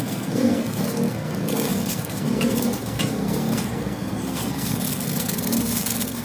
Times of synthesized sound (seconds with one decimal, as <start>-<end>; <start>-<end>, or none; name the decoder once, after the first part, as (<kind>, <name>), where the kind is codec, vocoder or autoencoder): 0.0-6.2 (codec, SNAC)